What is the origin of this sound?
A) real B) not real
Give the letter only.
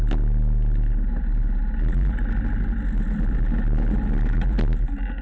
A